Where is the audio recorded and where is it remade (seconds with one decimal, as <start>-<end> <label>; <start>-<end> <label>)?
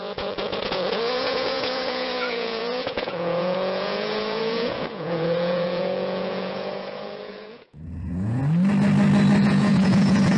0.0-8.4 remade; 8.4-9.4 recorded; 9.4-10.4 remade